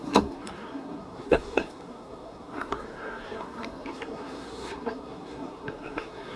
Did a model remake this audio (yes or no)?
yes